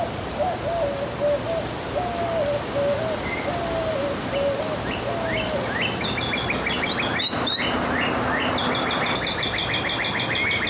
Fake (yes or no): no